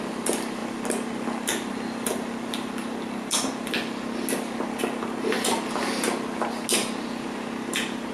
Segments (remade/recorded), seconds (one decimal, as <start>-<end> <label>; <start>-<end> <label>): 0.0-8.1 recorded